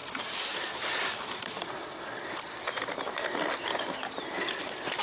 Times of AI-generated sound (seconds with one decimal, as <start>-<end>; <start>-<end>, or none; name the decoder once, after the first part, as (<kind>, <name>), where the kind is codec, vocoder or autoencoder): 0.0-1.8 (vocoder, BigVGAN v2)